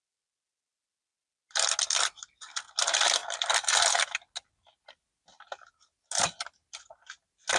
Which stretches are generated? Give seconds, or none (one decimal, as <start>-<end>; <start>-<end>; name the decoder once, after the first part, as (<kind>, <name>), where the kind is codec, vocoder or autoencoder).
none